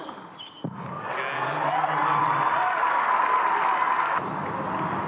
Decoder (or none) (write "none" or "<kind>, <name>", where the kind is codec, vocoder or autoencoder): none